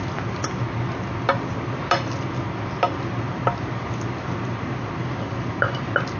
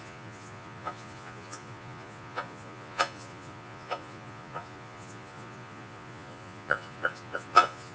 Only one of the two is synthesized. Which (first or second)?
second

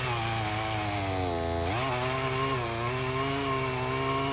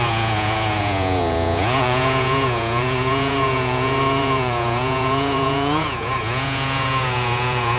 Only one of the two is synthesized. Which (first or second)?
second